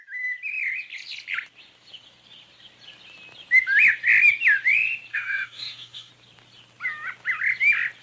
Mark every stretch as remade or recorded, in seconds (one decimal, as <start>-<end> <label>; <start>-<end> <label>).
0.0-5.1 recorded; 5.1-6.1 remade; 6.1-8.0 recorded